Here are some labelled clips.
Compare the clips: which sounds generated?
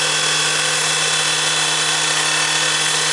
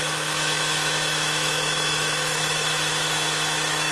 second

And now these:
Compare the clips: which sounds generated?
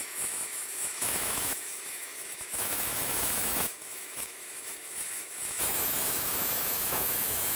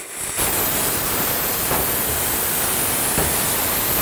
first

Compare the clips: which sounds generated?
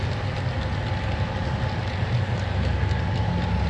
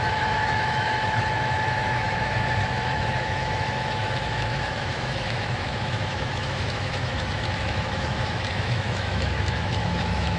second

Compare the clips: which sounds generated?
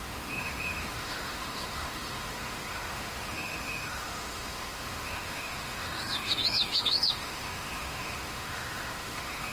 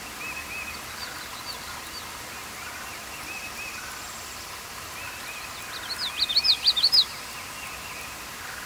first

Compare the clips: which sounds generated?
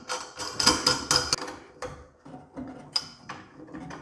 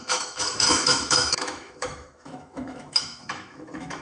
second